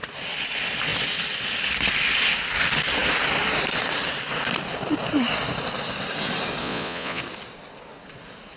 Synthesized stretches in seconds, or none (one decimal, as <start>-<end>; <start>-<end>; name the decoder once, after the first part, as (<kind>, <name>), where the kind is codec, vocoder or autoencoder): 6.6-7.2 (vocoder, Vocos)